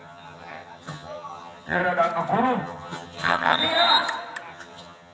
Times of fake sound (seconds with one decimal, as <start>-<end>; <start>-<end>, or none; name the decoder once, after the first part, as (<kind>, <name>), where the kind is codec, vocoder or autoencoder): 0.0-1.8 (vocoder, HiFi-GAN); 2.6-3.6; 4.5-5.1